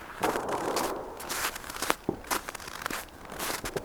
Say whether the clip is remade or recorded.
remade